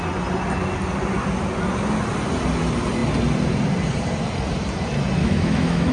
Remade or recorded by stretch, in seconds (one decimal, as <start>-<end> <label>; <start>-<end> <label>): 0.0-5.2 recorded; 5.2-5.9 remade